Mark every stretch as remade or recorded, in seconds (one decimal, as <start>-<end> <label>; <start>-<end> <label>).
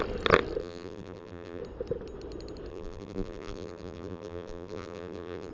0.0-0.6 recorded; 0.6-1.6 remade; 1.6-2.7 recorded; 2.7-5.5 remade